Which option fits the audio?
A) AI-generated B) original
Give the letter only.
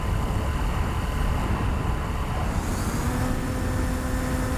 A